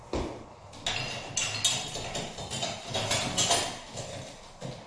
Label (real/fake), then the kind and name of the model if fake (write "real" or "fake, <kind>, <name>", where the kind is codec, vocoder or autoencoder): real